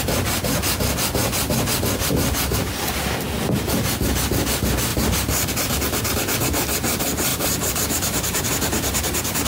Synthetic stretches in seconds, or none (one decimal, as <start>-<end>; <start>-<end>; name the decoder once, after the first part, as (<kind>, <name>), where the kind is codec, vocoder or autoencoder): 4.9-5.5 (vocoder, BigVGAN v2); 7.3-8.5